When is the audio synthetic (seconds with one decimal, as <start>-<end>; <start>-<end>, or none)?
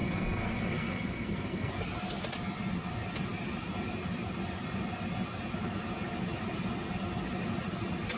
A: 0.0-1.7